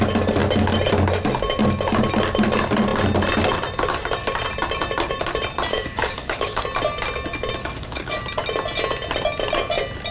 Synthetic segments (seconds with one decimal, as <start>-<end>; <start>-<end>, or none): 5.7-6.6; 7.6-8.2